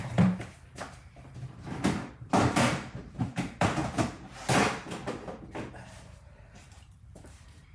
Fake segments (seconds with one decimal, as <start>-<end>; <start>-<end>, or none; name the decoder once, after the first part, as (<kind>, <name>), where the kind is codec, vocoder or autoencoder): 0.0-0.4 (vocoder, BigVGAN v2); 2.1-3.8; 5.7-7.7